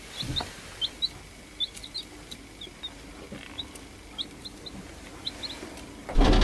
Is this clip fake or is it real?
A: real